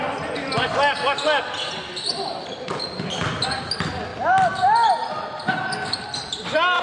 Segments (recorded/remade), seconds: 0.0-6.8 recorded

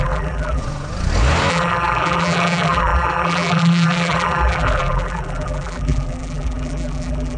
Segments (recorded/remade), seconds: 0.0-0.6 remade; 0.6-1.5 recorded; 1.5-7.4 remade

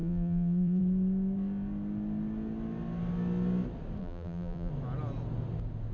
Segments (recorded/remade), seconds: 0.0-0.8 remade; 0.8-4.0 recorded; 4.0-4.7 remade; 4.7-5.9 recorded